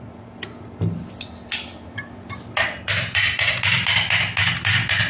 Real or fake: real